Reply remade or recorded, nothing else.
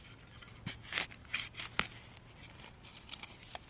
recorded